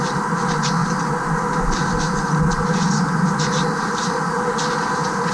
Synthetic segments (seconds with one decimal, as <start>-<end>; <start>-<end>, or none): none